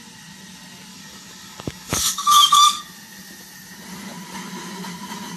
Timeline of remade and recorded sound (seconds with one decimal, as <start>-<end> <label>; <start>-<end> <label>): 0.0-0.9 recorded; 0.9-2.8 remade; 2.8-5.4 recorded